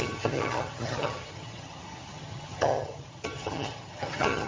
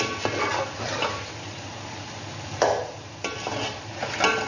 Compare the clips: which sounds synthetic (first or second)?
first